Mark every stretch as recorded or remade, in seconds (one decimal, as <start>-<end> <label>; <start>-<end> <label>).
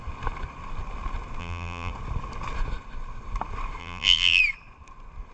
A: 0.0-1.4 recorded; 1.4-1.9 remade; 1.9-3.8 recorded; 3.8-4.4 remade; 4.4-5.3 recorded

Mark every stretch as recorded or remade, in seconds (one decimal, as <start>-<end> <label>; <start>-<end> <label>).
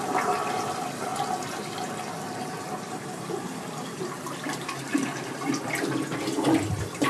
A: 0.0-1.1 remade; 1.1-2.8 recorded; 2.8-7.1 remade